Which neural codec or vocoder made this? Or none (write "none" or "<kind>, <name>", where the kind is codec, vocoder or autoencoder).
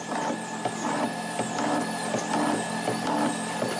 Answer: none